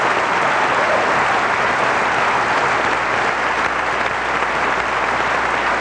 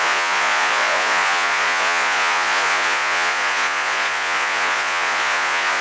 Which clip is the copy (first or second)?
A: second